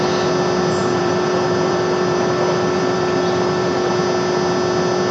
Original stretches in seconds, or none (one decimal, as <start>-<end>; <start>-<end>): 0.0-0.8; 3.9-5.1